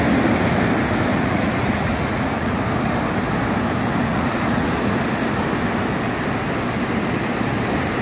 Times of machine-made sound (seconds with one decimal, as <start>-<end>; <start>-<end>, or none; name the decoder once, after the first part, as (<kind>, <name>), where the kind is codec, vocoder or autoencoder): 1.1-2.6 (vocoder, Vocos); 4.1-4.7